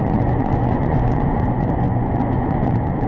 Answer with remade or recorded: remade